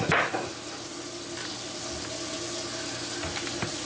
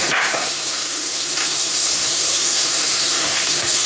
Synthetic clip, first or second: second